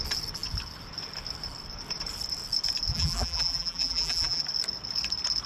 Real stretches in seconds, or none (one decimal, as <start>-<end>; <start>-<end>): 0.0-2.9; 4.4-5.5